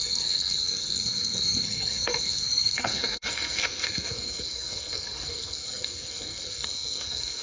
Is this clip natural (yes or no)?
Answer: no